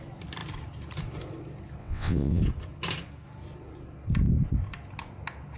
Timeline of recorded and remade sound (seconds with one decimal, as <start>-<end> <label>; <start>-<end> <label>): 0.0-1.8 recorded; 1.8-2.4 remade; 2.4-5.6 recorded